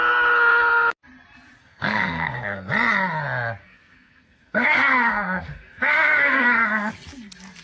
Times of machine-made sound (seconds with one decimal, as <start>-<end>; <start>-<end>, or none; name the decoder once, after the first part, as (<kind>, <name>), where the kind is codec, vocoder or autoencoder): 1.6-2.7 (codec, SNAC); 3.6-6.9